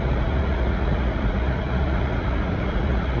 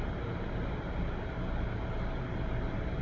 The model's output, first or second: first